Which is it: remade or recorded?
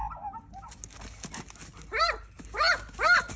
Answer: recorded